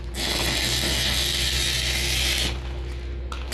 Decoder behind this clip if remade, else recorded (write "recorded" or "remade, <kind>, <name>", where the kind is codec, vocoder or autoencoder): recorded